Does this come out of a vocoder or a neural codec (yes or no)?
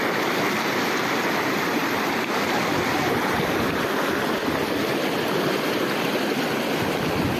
no